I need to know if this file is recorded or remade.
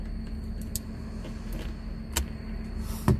recorded